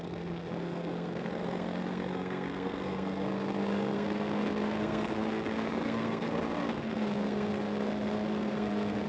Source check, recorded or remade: remade